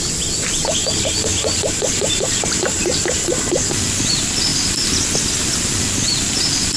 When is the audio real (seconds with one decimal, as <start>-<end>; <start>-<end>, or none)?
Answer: 0.0-1.3; 4.1-4.5